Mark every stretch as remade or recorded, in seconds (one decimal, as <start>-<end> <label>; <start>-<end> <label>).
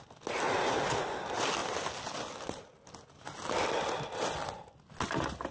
0.0-5.5 recorded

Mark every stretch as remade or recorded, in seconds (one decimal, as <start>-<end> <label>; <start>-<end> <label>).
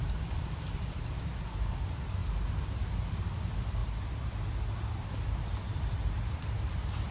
0.0-3.8 remade; 3.8-4.9 recorded; 4.9-7.1 remade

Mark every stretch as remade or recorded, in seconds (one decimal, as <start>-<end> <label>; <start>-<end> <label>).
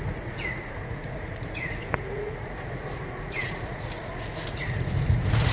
0.0-5.5 remade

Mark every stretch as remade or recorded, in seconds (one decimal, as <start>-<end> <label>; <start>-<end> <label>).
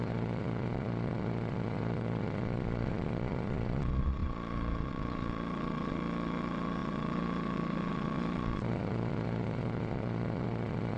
0.0-11.0 remade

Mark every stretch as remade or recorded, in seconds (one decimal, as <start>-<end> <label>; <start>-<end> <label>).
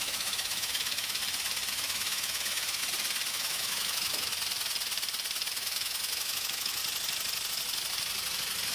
0.0-1.2 remade; 1.2-1.7 recorded; 1.7-2.8 remade; 2.8-3.3 recorded; 3.3-4.3 remade; 4.3-5.5 recorded; 5.5-6.8 remade; 6.8-8.7 recorded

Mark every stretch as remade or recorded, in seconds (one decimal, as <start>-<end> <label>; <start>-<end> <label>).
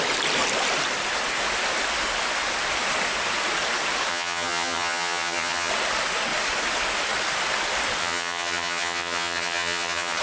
0.0-4.1 recorded; 4.1-5.7 remade; 5.7-8.0 recorded; 8.0-10.2 remade